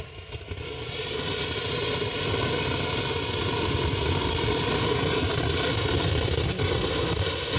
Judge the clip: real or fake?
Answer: real